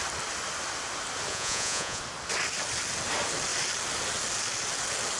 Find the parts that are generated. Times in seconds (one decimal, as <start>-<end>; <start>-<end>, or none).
1.3-2.0